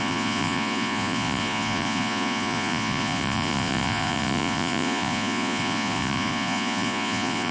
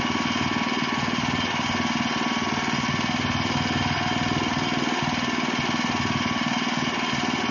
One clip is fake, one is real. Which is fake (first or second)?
first